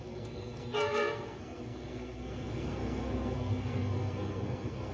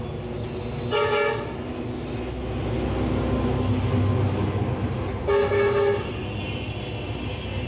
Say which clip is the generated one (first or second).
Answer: first